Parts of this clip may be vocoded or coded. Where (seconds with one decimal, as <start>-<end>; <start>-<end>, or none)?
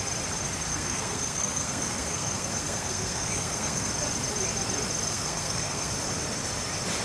0.7-3.9; 5.1-5.9